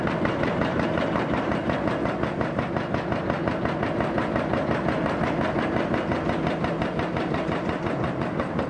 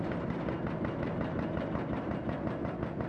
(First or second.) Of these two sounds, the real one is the second